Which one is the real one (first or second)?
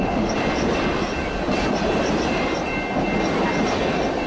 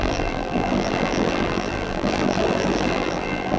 first